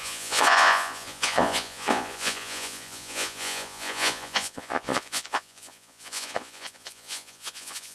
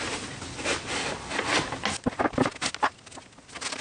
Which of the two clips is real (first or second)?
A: second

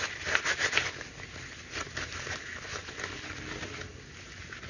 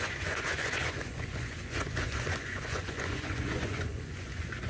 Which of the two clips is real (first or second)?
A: first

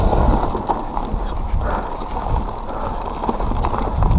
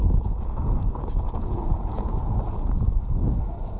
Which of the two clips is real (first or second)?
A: first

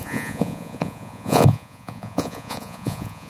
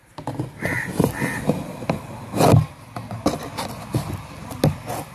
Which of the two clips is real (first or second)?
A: second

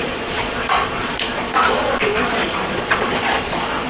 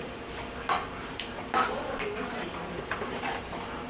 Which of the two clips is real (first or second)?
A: second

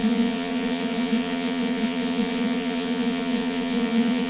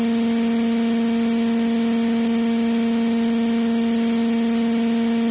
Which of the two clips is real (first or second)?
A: second